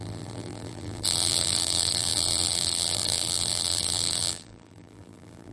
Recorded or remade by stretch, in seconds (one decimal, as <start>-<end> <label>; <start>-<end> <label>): 0.0-5.5 remade